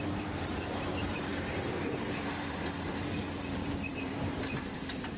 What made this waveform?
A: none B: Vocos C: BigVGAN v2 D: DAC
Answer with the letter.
C